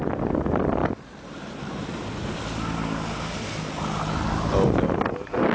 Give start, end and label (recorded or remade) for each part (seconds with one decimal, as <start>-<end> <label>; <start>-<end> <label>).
0.0-5.5 recorded